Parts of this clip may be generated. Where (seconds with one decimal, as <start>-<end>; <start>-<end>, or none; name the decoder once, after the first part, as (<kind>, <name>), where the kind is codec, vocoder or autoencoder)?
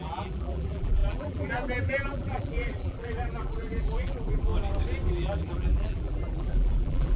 0.0-4.5 (vocoder, BigVGAN v2); 5.1-7.2